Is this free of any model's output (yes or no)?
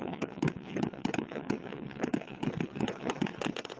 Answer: no